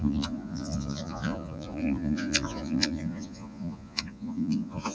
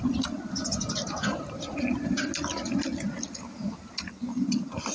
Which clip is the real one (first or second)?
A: second